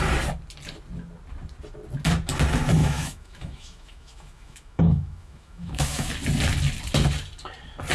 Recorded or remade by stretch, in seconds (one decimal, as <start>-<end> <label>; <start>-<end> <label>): 0.0-2.8 recorded; 2.8-6.1 remade; 6.1-7.9 recorded